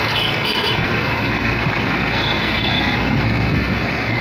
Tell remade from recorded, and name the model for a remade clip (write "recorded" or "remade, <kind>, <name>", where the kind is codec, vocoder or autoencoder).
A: remade, codec, SNAC